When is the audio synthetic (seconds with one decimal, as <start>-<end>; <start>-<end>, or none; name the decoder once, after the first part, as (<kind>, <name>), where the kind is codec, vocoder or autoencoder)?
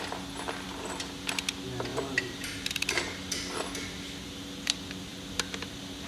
1.9-3.0 (vocoder, BigVGAN v2)